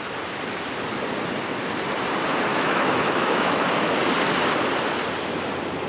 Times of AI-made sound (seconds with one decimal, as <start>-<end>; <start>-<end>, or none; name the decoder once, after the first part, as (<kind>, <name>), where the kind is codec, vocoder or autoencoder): 2.5-4.0 (autoencoder, DAC-VAE)